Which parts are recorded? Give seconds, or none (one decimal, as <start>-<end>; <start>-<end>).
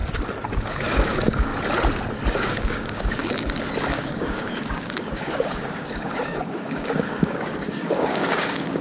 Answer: 0.0-0.5; 1.5-2.4; 3.2-3.9